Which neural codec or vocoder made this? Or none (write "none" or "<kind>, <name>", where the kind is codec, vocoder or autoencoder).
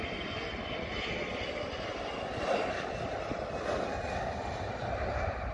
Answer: none